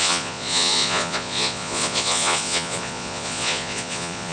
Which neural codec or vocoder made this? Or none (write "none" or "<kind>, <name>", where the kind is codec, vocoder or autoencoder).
vocoder, Vocos